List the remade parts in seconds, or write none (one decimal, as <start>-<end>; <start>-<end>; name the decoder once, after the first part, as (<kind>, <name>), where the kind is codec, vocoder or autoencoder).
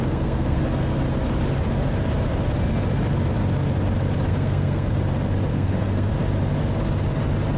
0.0-0.6 (codec, SNAC); 4.3-4.9; 5.5-6.1